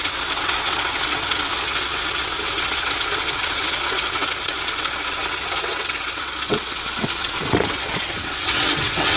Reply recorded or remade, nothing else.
remade